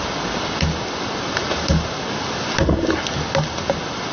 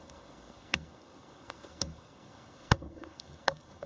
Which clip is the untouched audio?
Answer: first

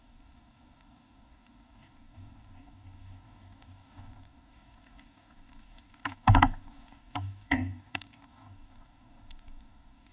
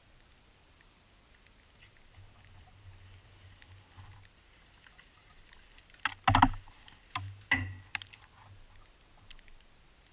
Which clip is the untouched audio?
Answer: second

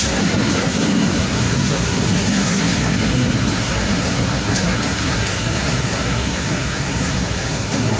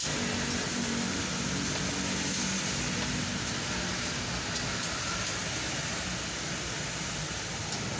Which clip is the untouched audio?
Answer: second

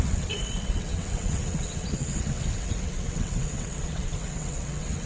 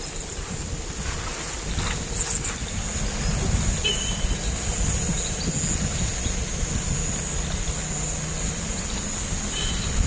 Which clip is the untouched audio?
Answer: second